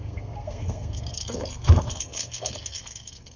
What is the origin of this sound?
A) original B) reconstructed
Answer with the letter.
B